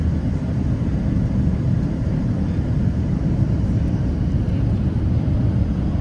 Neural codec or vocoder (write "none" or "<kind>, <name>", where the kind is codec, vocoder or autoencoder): vocoder, BigVGAN v2